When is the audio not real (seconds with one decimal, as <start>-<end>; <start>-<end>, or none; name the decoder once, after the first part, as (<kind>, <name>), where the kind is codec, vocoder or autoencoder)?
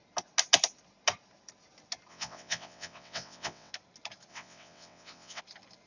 2.1-3.7 (vocoder, WaveNeXt); 4.3-5.4